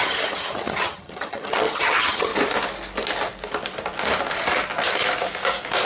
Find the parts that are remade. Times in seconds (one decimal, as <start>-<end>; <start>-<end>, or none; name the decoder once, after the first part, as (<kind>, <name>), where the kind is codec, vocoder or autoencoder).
0.0-2.3 (vocoder, HiFi-GAN)